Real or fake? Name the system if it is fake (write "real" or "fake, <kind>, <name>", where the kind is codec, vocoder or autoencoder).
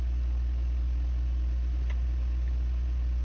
real